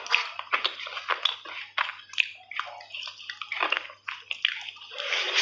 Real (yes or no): yes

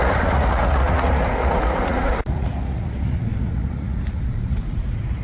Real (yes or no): no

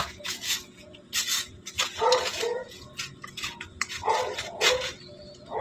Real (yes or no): no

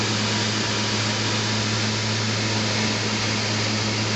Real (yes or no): yes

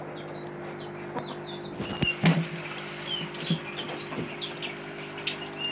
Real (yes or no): yes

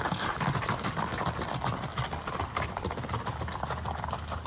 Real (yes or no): yes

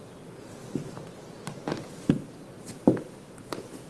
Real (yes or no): yes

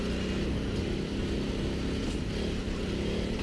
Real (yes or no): yes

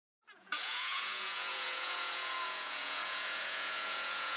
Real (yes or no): no